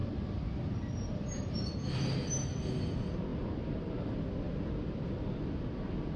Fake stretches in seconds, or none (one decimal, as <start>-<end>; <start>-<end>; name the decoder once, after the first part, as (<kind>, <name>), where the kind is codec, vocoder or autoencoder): 0.0-2.1 (vocoder, BigVGAN v2); 3.3-4.2